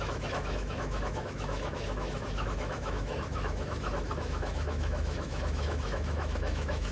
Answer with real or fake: fake